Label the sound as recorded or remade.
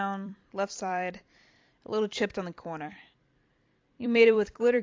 remade